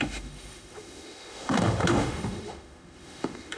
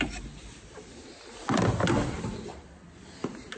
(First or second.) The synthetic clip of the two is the first